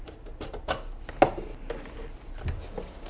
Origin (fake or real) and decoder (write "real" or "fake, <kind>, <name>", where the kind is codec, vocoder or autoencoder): real